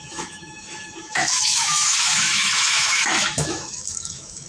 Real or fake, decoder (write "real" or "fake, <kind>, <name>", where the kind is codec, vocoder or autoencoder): fake, autoencoder, DAC-VAE